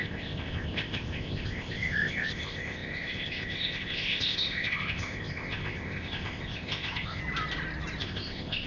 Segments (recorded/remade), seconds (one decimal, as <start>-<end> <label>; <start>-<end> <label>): 0.0-7.2 remade; 7.2-8.0 recorded; 8.0-8.7 remade